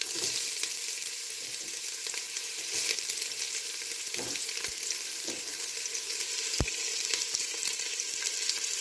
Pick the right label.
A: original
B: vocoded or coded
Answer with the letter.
A